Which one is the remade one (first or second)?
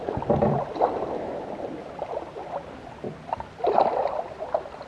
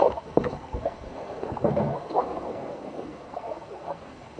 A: second